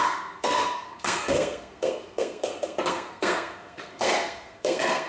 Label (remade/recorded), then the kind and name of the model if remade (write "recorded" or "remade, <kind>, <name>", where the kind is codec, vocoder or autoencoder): remade, codec, SNAC